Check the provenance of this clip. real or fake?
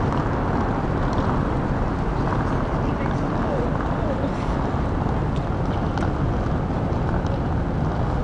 real